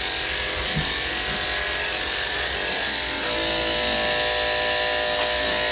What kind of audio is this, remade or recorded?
recorded